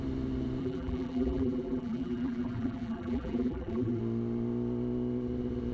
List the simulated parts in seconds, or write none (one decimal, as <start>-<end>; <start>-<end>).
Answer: 0.6-4.0